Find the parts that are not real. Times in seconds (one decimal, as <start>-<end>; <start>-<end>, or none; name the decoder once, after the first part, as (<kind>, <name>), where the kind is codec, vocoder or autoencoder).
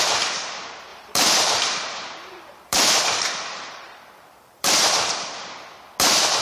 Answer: 0.9-4.7 (vocoder, BigVGAN v2)